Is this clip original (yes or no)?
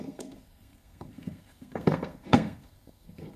no